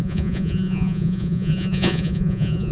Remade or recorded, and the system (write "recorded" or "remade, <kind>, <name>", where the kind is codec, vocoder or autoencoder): remade, vocoder, Vocos